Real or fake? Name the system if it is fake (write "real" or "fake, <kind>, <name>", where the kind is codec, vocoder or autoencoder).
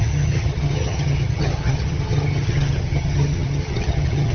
fake, vocoder, HiFi-GAN